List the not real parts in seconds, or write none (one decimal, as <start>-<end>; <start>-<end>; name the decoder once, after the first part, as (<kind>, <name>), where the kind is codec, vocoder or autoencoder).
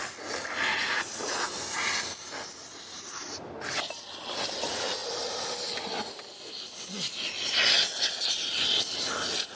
0.7-1.4 (vocoder, Vocos); 2.7-3.5